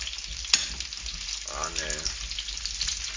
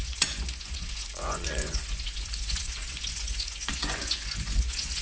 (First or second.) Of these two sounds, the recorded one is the first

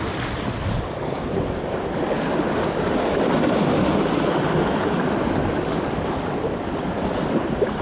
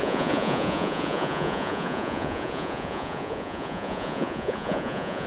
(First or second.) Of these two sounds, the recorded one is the first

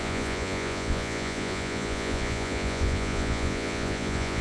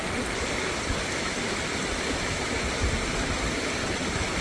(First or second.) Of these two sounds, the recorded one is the second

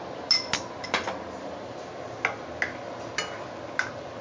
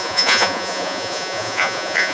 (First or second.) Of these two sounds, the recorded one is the first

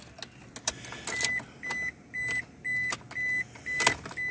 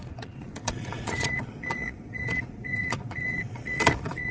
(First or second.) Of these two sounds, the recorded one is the first